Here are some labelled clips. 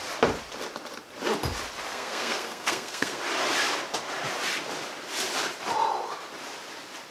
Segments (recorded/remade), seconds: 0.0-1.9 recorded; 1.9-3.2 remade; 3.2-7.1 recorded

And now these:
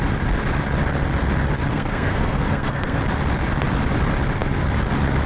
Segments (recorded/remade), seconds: 0.0-1.7 recorded; 1.7-3.0 remade; 3.0-5.3 recorded

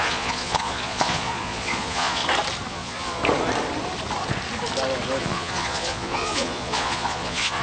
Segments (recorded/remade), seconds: 0.0-2.2 remade; 2.2-2.7 recorded; 2.7-3.2 remade; 3.2-5.2 recorded; 5.2-7.6 remade

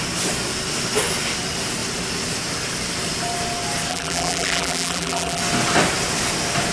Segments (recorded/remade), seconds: 0.0-3.9 recorded; 3.9-5.4 remade; 5.4-6.7 recorded

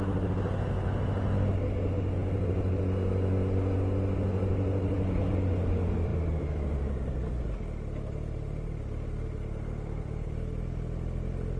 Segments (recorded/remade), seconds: 0.0-11.6 recorded

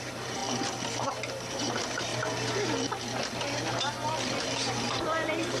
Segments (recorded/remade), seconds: 0.0-0.4 remade; 0.4-1.1 recorded; 1.1-2.1 remade; 2.1-4.4 recorded; 4.4-5.6 remade

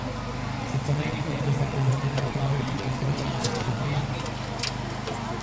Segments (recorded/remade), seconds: 0.0-0.6 recorded; 0.6-3.8 remade; 3.8-5.4 recorded